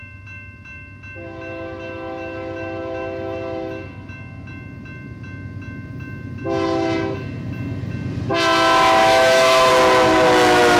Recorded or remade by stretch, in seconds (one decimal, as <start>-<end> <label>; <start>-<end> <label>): 0.0-9.0 recorded; 9.0-9.7 remade; 9.7-10.8 recorded